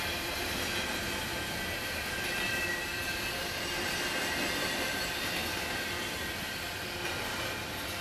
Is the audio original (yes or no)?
yes